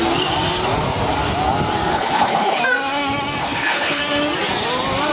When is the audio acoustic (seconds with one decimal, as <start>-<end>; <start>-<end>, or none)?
0.0-1.9; 2.6-3.4; 4.0-5.1